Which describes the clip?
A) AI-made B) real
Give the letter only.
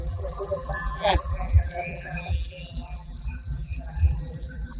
A